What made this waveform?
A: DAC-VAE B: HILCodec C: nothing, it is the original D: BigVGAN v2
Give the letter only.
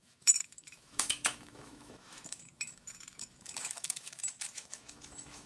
A